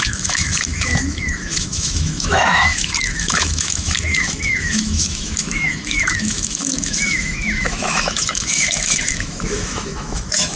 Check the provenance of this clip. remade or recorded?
remade